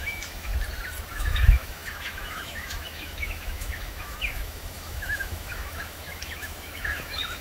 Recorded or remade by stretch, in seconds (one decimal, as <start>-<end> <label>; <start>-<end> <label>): 0.0-0.5 remade; 0.5-1.1 recorded; 1.1-7.4 remade